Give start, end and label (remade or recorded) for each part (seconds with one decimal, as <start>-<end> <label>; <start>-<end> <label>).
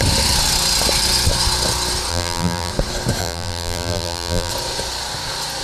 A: 0.0-2.1 recorded; 2.1-2.7 remade; 2.7-3.2 recorded; 3.2-4.5 remade; 4.5-5.6 recorded